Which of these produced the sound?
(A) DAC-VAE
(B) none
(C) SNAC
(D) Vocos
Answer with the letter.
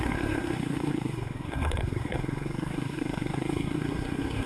C